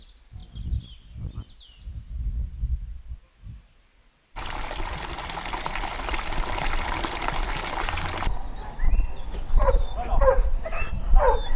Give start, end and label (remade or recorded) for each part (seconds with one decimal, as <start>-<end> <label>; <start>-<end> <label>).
0.0-11.6 recorded